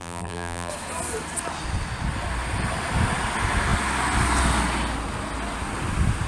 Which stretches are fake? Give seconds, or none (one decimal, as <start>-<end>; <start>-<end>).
0.0-0.7